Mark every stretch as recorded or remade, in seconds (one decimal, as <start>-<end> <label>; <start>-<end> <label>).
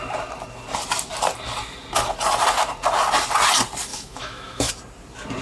0.0-3.9 recorded; 3.9-4.7 remade; 4.7-5.4 recorded